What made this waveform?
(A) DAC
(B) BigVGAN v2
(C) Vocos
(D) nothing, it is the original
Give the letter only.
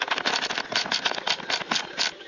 D